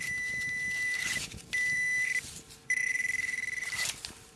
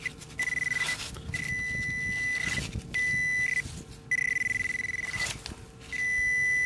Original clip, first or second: second